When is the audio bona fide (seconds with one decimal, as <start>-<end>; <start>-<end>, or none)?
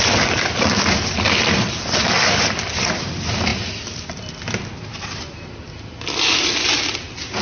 0.0-7.4